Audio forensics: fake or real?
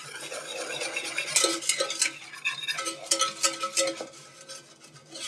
real